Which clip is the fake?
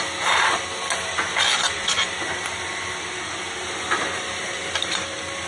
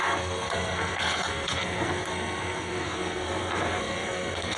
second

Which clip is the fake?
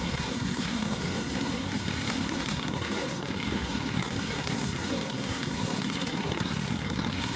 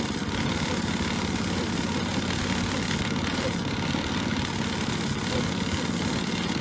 first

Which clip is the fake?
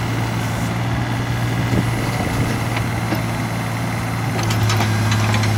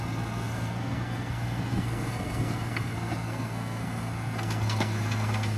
second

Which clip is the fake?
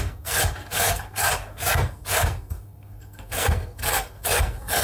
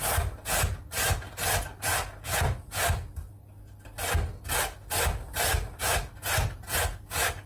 first